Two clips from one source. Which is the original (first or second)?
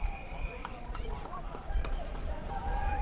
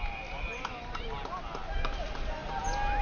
second